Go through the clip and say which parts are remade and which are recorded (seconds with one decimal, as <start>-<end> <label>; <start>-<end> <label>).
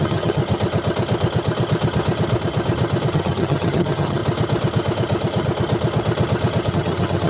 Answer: 0.0-0.4 remade; 0.4-3.1 recorded; 3.1-4.2 remade; 4.2-6.7 recorded; 6.7-7.3 remade